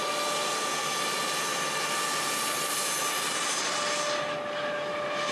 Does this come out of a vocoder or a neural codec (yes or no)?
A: no